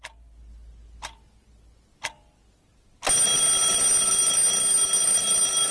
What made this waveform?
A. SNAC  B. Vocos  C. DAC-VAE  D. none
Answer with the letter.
D